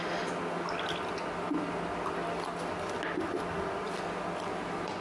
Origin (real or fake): real